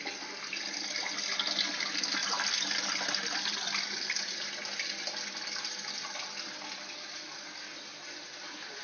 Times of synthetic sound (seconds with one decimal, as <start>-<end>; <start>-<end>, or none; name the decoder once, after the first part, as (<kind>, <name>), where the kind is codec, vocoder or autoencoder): 2.2-5.6 (vocoder, BigVGAN v2); 7.9-8.4